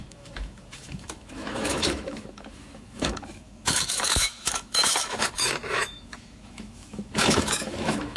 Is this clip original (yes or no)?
no